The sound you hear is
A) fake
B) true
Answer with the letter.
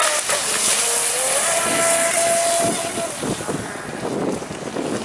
B